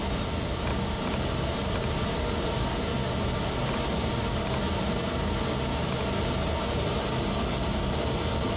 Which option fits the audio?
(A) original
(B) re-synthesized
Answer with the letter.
A